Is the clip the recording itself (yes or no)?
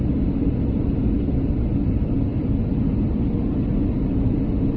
yes